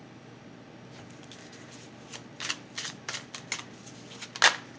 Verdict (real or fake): real